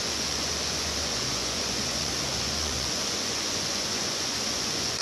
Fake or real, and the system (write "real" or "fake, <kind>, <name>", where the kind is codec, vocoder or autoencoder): fake, vocoder, Vocos